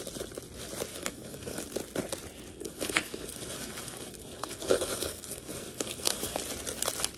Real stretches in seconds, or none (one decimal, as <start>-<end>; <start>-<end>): 0.0-0.9; 1.6-2.5; 6.4-7.2